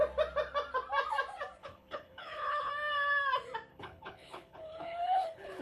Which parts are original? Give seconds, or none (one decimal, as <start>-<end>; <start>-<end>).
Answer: 0.0-1.6; 2.7-3.7